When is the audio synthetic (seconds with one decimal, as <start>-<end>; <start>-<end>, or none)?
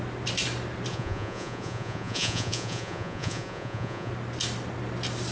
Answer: 0.9-4.1